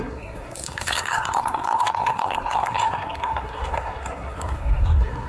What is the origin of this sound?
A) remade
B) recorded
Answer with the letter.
A